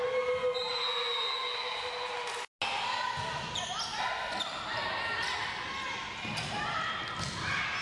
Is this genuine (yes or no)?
yes